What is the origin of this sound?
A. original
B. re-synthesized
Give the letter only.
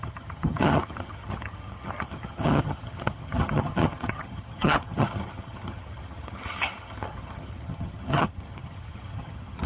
B